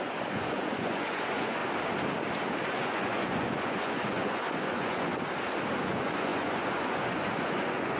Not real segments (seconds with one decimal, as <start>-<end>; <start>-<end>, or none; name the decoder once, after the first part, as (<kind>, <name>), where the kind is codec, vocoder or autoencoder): 0.0-1.6 (vocoder, Vocos); 2.7-5.1; 5.8-8.0